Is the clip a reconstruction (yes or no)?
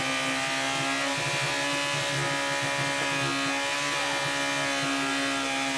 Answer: no